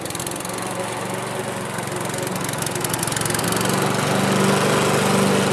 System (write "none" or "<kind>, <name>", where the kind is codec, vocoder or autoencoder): none